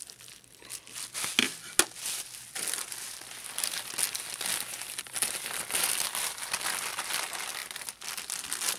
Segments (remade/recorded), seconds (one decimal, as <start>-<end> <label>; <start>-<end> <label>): 0.0-8.8 recorded